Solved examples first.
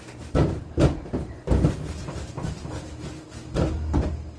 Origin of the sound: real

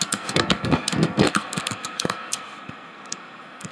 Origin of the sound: fake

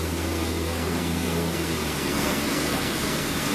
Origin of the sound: fake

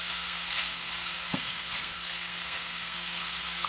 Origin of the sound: fake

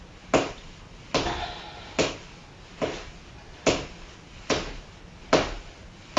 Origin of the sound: real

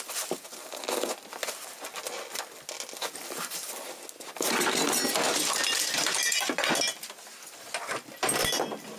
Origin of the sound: real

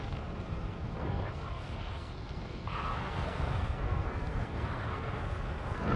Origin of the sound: fake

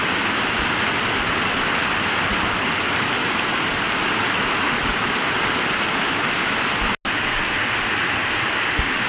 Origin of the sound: real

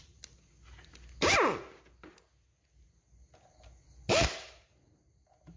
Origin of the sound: real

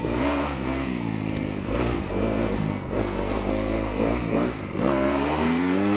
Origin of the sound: fake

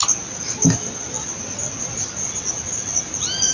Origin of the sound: real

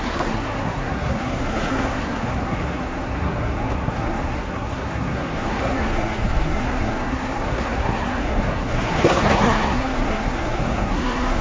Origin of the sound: fake